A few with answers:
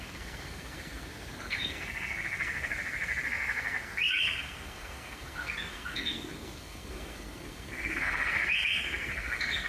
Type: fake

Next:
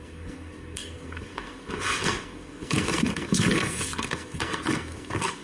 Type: fake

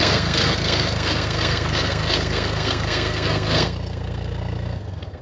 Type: fake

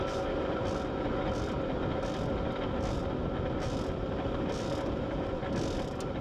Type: real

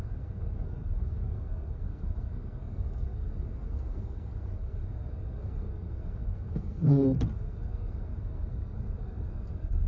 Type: fake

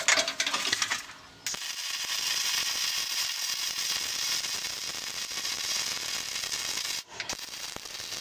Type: real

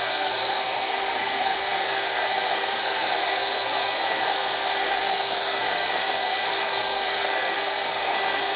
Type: fake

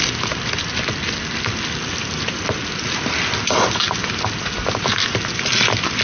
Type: real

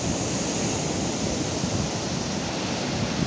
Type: real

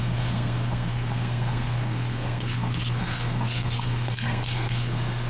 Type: fake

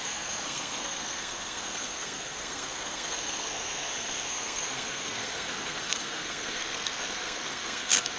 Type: fake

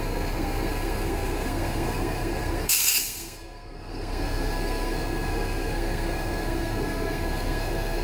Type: fake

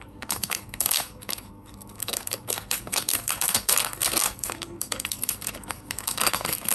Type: fake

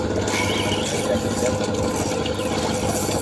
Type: real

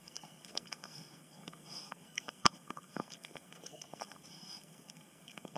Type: fake